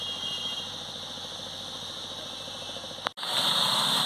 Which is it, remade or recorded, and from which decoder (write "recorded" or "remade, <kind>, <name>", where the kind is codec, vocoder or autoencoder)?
recorded